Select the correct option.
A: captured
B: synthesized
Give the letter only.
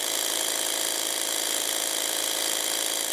A